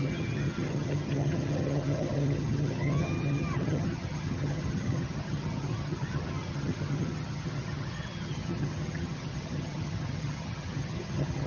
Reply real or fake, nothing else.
fake